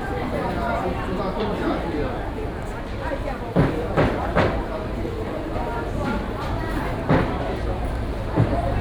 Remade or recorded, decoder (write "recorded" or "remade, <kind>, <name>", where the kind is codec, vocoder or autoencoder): remade, vocoder, BigVGAN v2